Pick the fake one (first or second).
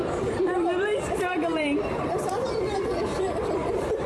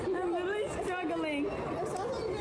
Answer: first